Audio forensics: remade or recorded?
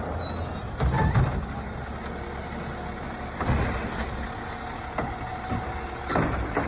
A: recorded